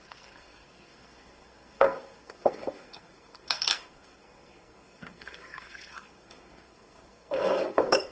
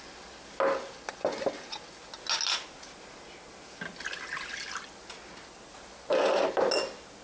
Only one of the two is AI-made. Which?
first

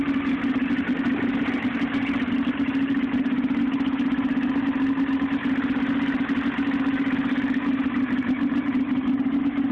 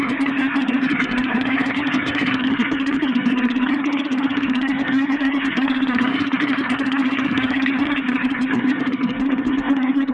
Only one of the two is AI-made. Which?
second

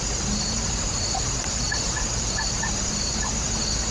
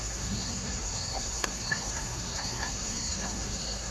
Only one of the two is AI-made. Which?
second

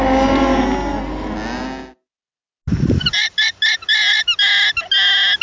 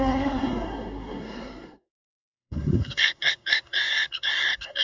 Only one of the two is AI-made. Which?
second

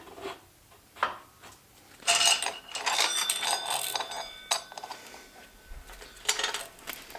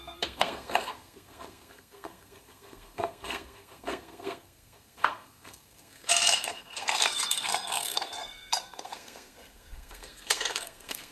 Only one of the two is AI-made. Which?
second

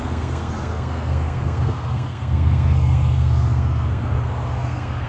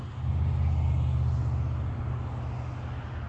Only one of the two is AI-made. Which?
first